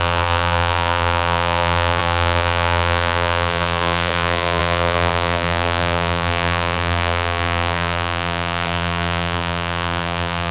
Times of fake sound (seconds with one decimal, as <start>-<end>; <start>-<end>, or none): 0.0-10.5